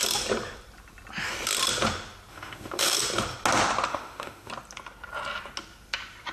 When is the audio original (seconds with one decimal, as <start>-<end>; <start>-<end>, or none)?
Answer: 0.0-2.3; 3.0-3.9; 4.5-6.3